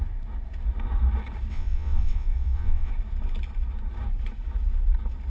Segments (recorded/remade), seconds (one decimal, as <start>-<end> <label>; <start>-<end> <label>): 0.0-1.5 recorded; 1.5-2.9 remade; 2.9-5.3 recorded